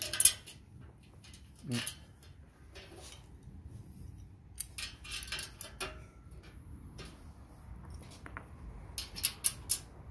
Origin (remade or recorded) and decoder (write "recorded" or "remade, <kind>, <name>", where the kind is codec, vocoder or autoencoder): recorded